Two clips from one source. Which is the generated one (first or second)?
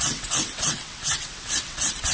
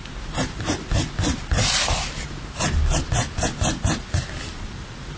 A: first